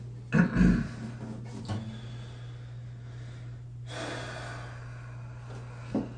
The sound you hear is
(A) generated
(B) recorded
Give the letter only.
B